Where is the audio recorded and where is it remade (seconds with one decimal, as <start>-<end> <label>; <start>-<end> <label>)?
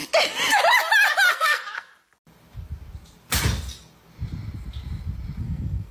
0.0-1.3 recorded; 1.3-1.9 remade; 1.9-5.4 recorded; 5.4-5.9 remade